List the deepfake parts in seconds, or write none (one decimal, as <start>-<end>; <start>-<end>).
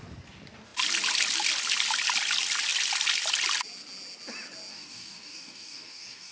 4.7-6.3